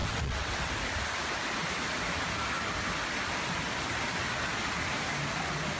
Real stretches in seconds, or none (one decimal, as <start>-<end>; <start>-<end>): 0.7-5.8